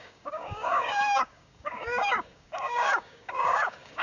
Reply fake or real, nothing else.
fake